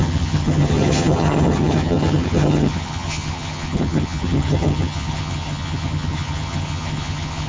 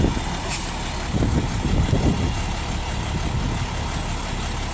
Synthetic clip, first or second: first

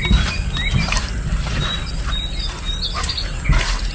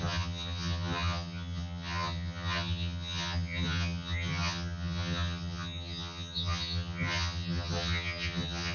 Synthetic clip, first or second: second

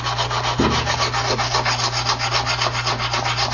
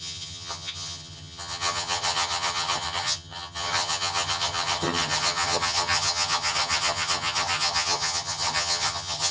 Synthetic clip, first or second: second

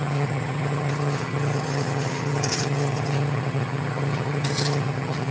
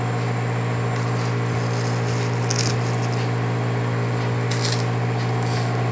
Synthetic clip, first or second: first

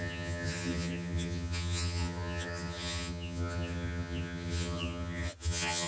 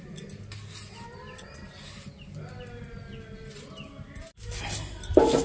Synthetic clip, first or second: first